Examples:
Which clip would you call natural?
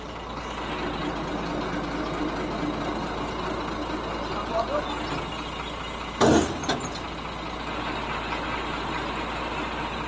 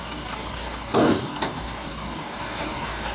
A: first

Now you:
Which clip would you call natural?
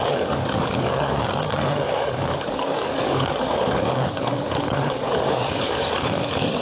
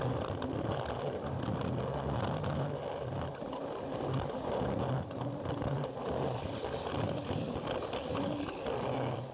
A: second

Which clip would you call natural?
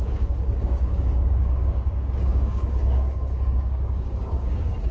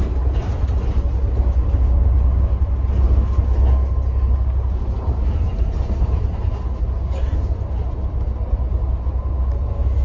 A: second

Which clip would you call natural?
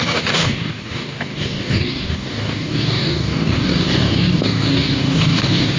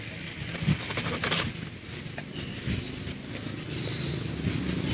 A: second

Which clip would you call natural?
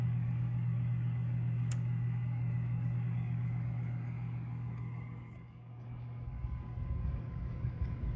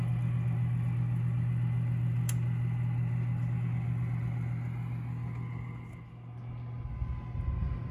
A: second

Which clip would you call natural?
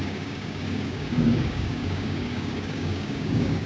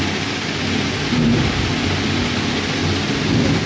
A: second